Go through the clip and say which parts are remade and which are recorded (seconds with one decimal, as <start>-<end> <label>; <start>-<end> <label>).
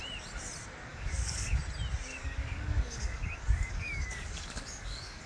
0.0-0.9 recorded; 0.9-1.6 remade; 1.6-2.1 recorded; 2.1-5.3 remade